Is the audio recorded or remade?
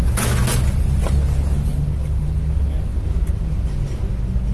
recorded